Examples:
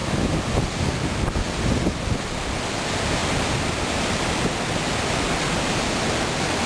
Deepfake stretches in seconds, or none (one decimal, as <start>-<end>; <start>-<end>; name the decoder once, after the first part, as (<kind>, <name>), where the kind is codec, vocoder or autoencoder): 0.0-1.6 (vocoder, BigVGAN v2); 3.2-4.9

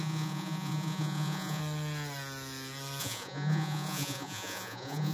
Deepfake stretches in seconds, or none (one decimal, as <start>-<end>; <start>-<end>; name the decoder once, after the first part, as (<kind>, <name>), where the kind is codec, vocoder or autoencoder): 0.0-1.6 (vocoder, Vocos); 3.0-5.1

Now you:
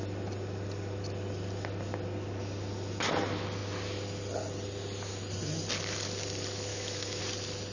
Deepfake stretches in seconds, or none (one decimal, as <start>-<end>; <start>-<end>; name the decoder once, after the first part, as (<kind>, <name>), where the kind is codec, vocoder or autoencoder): 6.7-7.2 (autoencoder, DAC-VAE)